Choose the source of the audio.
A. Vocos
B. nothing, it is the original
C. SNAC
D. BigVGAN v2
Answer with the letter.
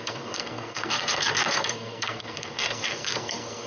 C